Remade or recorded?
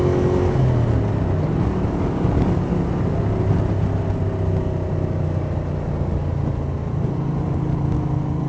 recorded